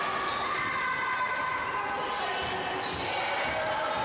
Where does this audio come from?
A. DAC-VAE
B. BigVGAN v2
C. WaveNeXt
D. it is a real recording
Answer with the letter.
D